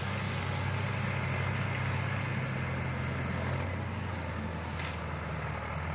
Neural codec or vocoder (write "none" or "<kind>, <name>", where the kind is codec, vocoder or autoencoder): none